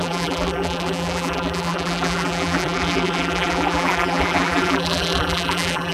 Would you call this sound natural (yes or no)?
no